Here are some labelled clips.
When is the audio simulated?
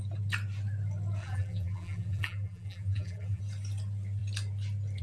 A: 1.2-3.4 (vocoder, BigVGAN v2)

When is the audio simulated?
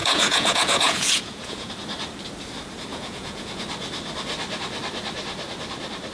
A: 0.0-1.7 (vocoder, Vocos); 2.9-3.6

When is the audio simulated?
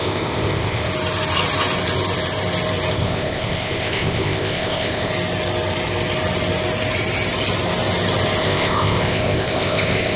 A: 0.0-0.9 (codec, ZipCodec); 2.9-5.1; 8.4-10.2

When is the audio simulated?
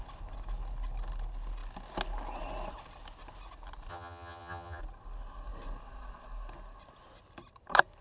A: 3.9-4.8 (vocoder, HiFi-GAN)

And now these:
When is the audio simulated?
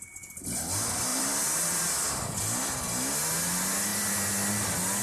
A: 1.1-1.9 (vocoder, BigVGAN v2)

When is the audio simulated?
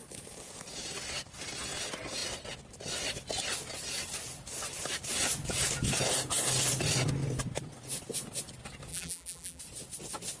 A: 8.9-9.6 (vocoder, BigVGAN v2)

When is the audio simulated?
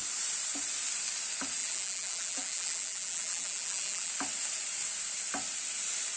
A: 1.6-4.1 (vocoder, BigVGAN v2)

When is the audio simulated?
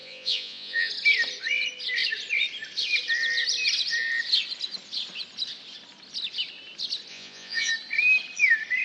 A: 0.0-0.9 (vocoder, Vocos); 7.1-7.7